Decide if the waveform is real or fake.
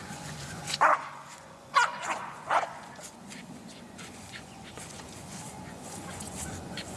fake